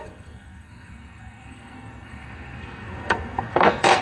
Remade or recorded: remade